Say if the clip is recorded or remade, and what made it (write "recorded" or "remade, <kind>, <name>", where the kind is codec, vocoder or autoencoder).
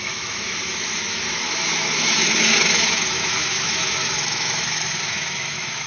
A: remade, autoencoder, DAC-VAE